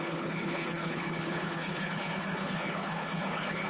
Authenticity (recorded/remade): remade